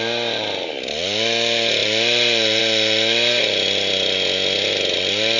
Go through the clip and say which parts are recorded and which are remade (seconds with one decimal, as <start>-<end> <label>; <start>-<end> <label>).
0.0-5.4 recorded